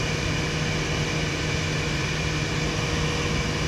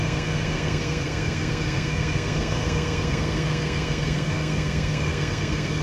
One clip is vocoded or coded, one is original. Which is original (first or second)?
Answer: first